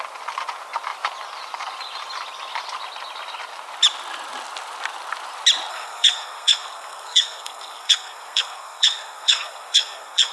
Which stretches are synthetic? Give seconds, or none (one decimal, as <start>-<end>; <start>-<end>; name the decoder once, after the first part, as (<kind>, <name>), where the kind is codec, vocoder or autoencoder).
5.7-10.3 (codec, SNAC)